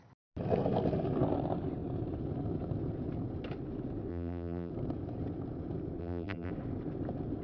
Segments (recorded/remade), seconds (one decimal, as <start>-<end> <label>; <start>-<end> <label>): 0.0-4.1 recorded; 4.1-4.7 remade; 4.7-6.0 recorded; 6.0-6.5 remade; 6.5-7.4 recorded